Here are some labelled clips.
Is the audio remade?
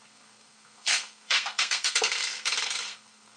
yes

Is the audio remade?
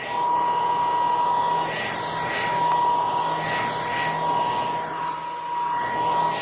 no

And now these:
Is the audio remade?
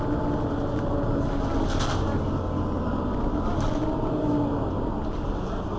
no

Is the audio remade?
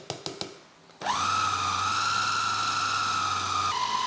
no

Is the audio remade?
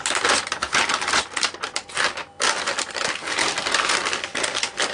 no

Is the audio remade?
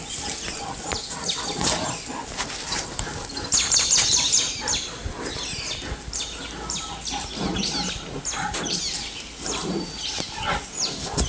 no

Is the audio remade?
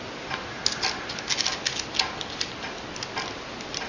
no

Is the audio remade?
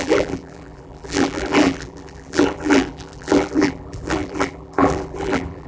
yes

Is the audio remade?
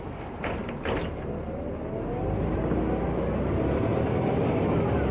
no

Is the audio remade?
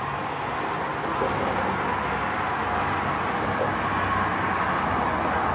no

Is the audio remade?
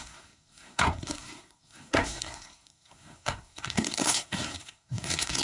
yes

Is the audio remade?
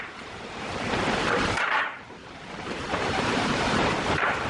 yes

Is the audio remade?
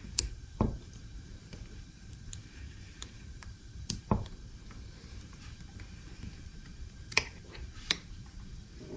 yes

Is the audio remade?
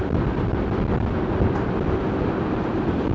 no